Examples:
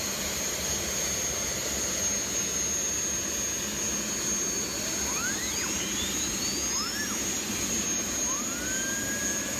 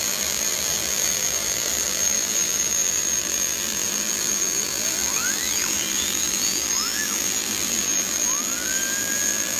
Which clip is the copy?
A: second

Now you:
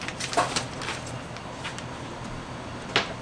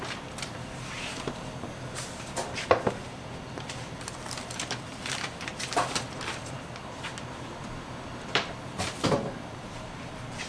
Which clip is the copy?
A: second